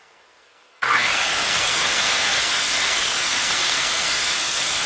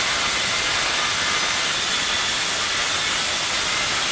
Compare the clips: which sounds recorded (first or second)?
second